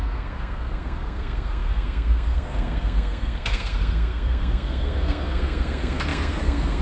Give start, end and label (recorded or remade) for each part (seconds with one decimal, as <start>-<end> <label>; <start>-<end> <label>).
0.0-6.8 remade